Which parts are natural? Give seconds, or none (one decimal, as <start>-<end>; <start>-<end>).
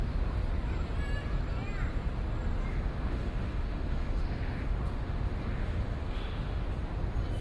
0.0-2.7; 6.6-7.4